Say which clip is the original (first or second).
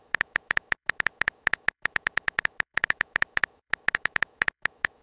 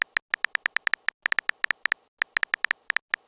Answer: second